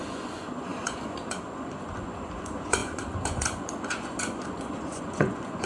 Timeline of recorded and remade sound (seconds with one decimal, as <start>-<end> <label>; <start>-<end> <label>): 0.0-5.7 remade